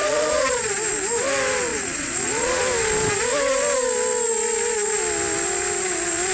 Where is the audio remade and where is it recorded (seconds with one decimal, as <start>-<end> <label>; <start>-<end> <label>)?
0.0-0.7 remade; 0.7-1.7 recorded; 1.7-2.6 remade; 2.6-6.3 recorded